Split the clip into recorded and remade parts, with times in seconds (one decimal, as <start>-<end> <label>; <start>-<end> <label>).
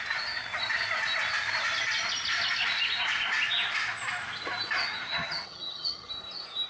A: 0.0-4.8 recorded; 4.8-6.1 remade; 6.1-6.7 recorded